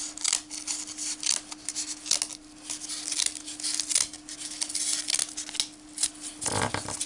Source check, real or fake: real